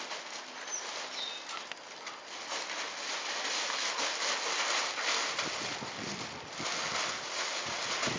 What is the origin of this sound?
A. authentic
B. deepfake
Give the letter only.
A